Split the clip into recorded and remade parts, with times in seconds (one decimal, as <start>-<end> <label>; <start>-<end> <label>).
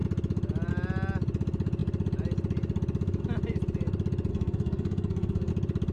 0.0-4.3 recorded; 4.3-5.5 remade; 5.5-5.9 recorded